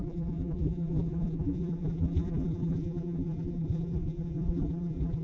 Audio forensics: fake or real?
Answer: fake